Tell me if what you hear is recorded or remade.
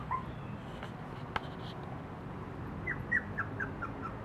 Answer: recorded